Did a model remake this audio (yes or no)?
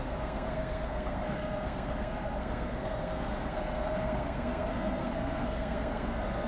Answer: yes